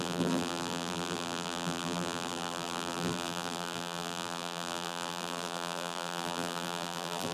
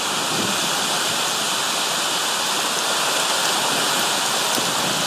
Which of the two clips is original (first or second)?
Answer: second